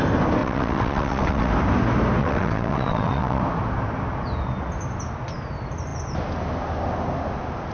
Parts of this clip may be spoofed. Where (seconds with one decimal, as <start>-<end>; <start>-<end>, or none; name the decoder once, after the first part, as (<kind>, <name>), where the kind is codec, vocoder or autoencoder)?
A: 0.4-1.5 (vocoder, WaveNeXt); 2.2-3.4